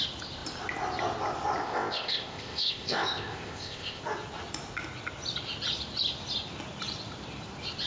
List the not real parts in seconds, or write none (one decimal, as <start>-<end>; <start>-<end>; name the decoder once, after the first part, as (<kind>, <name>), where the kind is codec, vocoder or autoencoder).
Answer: 1.6-4.0 (codec, ZipCodec)

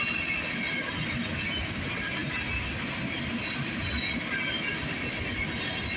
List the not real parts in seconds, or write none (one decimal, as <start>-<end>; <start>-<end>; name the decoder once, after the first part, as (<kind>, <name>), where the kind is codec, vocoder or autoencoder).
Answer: none

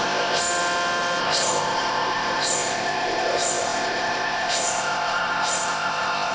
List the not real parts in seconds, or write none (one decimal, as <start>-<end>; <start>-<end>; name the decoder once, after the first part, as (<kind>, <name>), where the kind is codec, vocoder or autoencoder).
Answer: 0.0-0.4 (codec, ZipCodec); 1.2-6.3

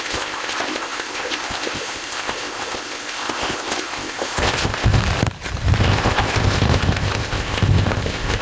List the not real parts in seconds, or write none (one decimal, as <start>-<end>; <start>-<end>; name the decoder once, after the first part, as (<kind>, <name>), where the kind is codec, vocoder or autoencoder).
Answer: 0.0-5.0 (codec, ZipCodec); 5.8-8.4

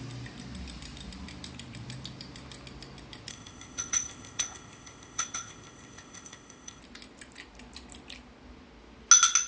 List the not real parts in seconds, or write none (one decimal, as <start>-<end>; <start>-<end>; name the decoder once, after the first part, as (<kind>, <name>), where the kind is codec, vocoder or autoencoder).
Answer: 3.3-6.8 (codec, ZipCodec)